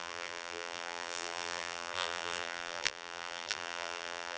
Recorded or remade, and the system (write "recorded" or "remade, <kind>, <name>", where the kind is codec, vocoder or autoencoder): remade, vocoder, BigVGAN v2